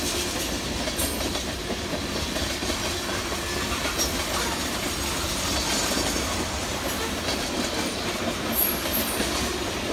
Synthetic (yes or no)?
no